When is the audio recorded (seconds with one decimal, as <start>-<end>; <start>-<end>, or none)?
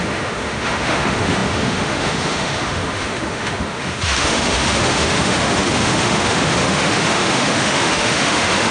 none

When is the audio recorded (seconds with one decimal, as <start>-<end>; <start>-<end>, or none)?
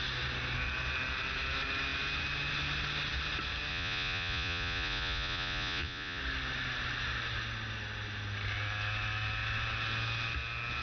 0.0-3.7; 6.2-10.8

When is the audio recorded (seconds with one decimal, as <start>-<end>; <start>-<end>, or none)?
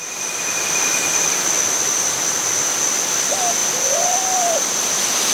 0.0-3.6; 4.6-5.3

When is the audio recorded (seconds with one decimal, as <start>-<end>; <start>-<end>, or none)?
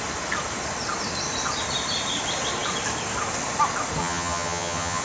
0.0-4.0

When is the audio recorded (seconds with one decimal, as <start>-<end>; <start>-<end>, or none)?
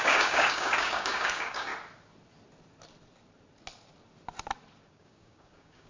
1.7-4.9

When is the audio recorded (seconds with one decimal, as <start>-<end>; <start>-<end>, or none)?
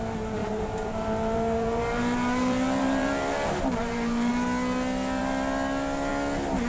0.0-0.4; 4.3-6.7